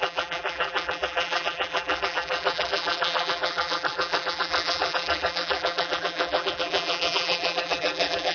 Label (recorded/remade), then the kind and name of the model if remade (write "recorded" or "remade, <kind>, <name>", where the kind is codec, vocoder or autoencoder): remade, vocoder, BigVGAN v2